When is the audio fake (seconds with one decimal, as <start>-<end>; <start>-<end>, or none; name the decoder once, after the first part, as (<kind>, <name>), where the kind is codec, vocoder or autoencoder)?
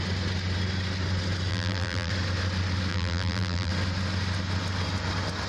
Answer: 1.5-2.1 (vocoder, BigVGAN v2); 2.9-3.7